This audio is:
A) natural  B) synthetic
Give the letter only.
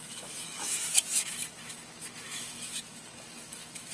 B